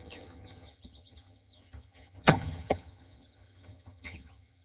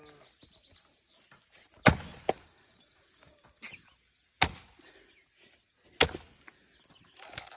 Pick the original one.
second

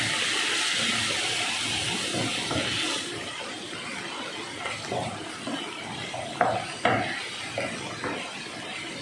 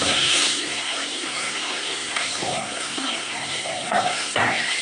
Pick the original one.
first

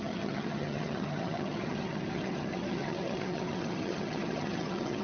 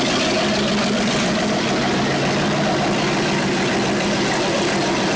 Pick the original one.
second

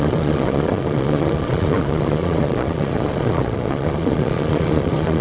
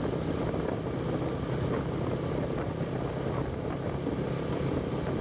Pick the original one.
second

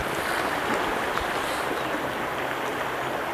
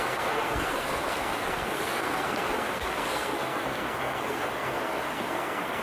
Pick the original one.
first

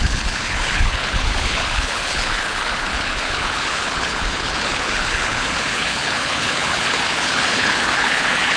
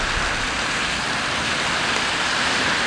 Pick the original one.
second